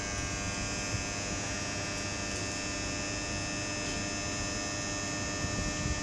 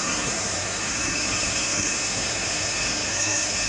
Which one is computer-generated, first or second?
second